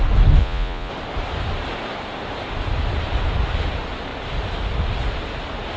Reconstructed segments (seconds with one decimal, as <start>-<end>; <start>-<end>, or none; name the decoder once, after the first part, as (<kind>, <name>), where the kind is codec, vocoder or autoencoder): 0.4-0.9 (vocoder, Vocos)